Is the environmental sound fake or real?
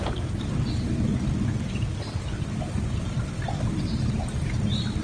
real